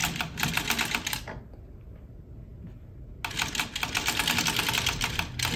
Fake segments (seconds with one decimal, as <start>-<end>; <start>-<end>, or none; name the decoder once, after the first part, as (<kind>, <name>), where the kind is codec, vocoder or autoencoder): none